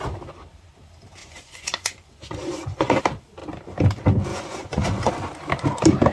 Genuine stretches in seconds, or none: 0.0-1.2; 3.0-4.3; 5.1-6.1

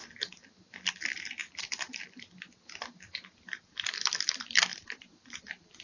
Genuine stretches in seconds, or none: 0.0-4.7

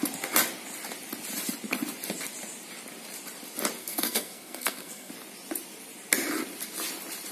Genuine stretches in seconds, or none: 0.0-3.8; 5.1-7.3